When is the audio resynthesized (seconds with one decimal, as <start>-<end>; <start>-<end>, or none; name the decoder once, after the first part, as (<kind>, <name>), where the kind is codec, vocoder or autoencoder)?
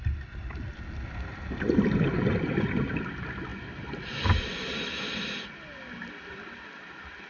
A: none